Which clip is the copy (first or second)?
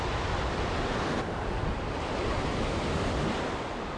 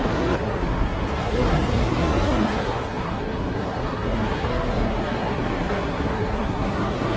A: second